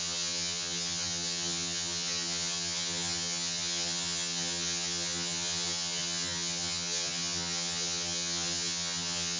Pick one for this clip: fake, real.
fake